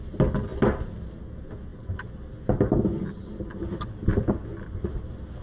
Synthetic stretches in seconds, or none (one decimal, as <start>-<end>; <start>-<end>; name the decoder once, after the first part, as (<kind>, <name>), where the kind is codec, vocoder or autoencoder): none

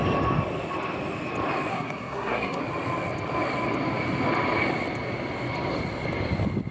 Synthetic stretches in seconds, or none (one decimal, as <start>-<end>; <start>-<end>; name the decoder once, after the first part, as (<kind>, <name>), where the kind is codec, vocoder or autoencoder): 1.7-2.6 (codec, SNAC)

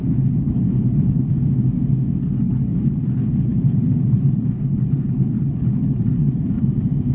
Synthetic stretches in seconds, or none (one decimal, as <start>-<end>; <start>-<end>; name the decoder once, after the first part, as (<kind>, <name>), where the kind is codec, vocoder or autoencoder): 0.0-1.3 (codec, HILCodec); 2.2-6.5

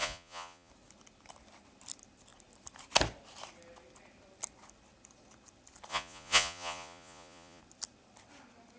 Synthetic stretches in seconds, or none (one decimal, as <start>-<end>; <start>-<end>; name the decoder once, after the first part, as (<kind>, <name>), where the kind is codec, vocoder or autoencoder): 0.0-0.7 (vocoder, Vocos); 5.9-7.6

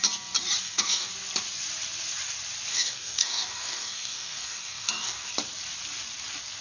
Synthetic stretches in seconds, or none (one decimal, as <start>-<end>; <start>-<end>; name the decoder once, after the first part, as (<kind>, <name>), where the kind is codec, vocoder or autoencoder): 0.6-1.1 (codec, DAC); 2.7-5.3